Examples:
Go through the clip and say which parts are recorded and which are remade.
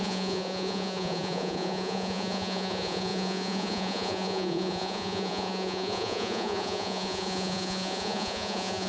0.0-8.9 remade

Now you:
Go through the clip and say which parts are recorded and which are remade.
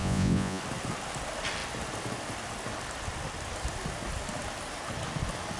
0.0-0.6 remade; 0.6-5.6 recorded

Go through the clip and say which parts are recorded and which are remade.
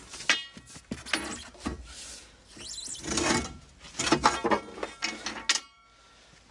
0.0-6.5 recorded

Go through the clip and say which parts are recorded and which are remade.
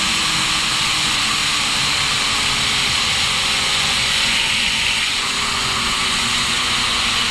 0.0-1.4 remade; 1.4-3.2 recorded; 3.2-7.3 remade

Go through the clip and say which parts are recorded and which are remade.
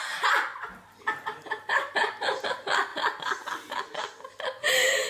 0.0-5.1 recorded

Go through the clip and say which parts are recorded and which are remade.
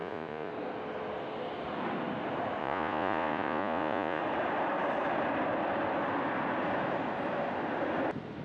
0.0-0.5 remade; 0.5-2.6 recorded; 2.6-4.2 remade; 4.2-8.4 recorded